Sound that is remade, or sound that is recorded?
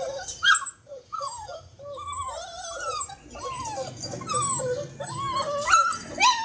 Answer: recorded